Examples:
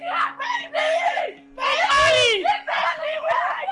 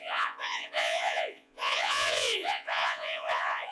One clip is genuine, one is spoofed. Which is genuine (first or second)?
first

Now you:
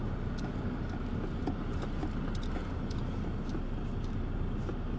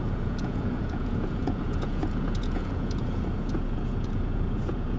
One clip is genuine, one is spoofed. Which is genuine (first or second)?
first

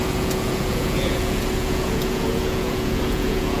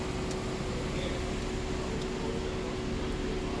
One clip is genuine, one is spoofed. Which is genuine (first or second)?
second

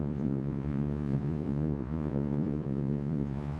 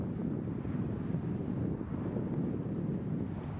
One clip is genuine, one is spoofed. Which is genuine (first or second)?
second